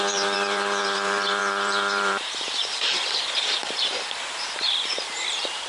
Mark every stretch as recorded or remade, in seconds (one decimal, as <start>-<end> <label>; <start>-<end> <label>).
0.0-5.7 remade